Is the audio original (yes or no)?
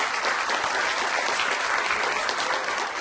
yes